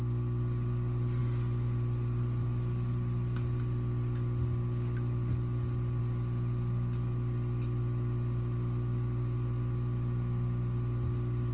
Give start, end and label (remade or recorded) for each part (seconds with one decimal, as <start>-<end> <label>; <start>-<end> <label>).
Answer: 0.0-11.5 recorded